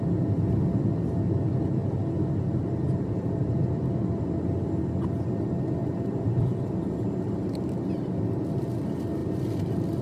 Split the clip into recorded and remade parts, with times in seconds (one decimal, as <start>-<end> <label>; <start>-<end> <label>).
0.0-1.8 recorded; 1.8-4.4 remade; 4.4-5.8 recorded; 5.8-6.7 remade; 6.7-10.0 recorded